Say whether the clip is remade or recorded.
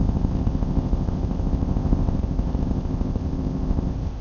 remade